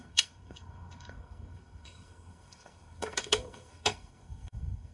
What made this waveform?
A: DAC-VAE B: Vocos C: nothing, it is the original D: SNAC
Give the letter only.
D